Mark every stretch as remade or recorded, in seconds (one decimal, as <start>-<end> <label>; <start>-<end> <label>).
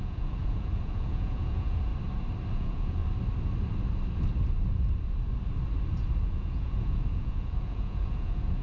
0.0-1.9 remade; 1.9-2.5 recorded; 2.5-3.0 remade; 3.0-6.2 recorded; 6.2-8.6 remade